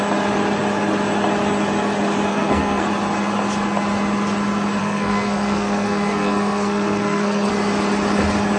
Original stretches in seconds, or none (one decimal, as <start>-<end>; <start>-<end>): 0.0-2.3; 2.9-4.8; 7.5-8.6